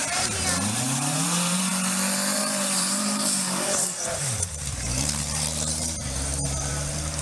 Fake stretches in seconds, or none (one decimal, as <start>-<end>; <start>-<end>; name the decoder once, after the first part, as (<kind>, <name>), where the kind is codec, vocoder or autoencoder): 0.0-1.7 (vocoder, BigVGAN v2); 2.4-6.7